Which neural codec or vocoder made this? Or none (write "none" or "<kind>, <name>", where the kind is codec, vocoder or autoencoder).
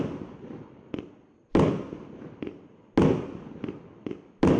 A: none